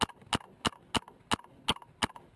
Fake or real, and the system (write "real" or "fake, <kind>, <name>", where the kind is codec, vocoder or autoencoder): real